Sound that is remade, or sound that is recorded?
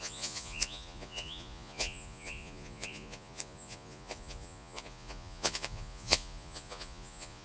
remade